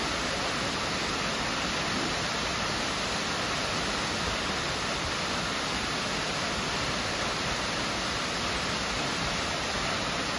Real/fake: real